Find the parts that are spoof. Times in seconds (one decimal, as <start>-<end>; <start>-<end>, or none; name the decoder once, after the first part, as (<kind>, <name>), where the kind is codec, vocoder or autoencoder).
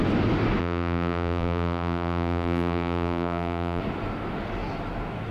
0.6-3.8 (vocoder, BigVGAN v2)